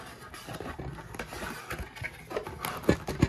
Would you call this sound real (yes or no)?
yes